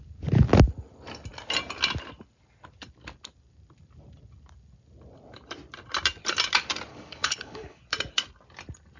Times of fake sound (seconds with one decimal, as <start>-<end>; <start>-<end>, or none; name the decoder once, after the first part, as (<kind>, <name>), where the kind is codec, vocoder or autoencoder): 6.9-7.8 (codec, HILCodec)